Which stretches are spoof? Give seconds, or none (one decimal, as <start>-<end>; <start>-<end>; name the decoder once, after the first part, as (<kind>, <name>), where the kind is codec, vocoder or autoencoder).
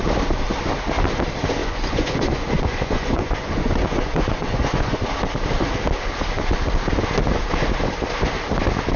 1.6-5.0 (vocoder, Vocos)